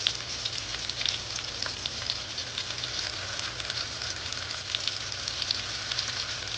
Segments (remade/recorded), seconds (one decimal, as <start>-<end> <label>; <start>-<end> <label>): 0.0-0.7 remade; 0.7-1.6 recorded; 1.6-2.4 remade; 2.4-5.8 recorded; 5.8-6.6 remade